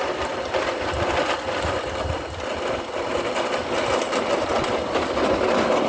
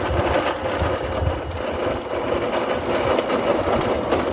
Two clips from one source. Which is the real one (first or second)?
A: second